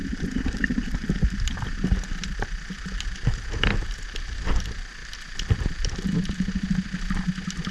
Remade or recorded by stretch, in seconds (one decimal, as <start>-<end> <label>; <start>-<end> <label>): 0.0-5.0 recorded; 5.0-5.9 remade; 5.9-7.7 recorded